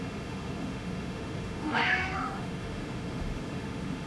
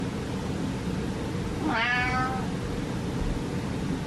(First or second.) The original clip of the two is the second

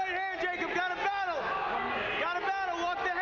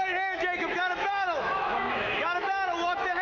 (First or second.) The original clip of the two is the first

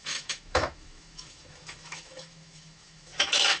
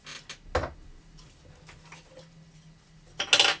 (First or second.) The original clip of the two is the second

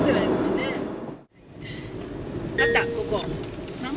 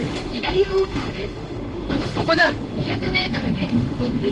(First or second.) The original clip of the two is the first